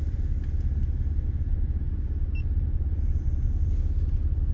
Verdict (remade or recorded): recorded